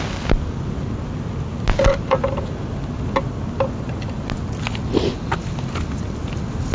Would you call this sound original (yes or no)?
yes